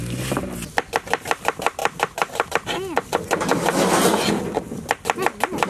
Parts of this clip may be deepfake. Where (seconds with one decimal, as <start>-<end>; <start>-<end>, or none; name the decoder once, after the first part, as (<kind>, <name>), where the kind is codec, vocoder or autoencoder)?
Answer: none